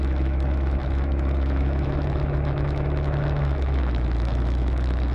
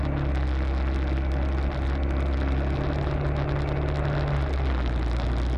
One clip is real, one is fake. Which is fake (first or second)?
first